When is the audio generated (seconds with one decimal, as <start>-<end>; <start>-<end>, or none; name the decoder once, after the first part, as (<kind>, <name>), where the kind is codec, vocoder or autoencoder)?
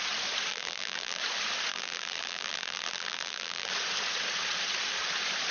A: 0.5-1.2 (vocoder, BigVGAN v2); 1.7-3.7